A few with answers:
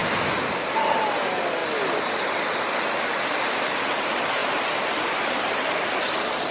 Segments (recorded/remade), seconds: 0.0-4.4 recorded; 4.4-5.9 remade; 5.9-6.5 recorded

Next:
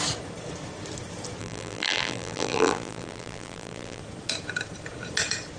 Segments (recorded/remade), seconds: 0.0-1.4 recorded; 1.4-4.0 remade; 4.0-5.6 recorded

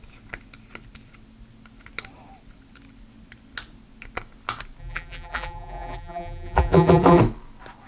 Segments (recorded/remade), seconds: 0.0-4.8 recorded; 4.8-7.2 remade; 7.2-7.9 recorded

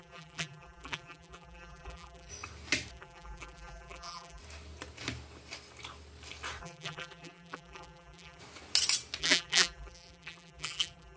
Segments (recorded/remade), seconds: 0.0-2.3 remade; 2.3-2.9 recorded; 2.9-4.4 remade; 4.4-6.6 recorded; 6.6-8.4 remade; 8.4-9.2 recorded; 9.2-11.2 remade

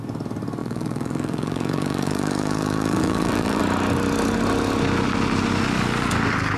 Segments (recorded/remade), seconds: 0.0-0.6 recorded; 0.6-3.6 remade; 3.6-6.6 recorded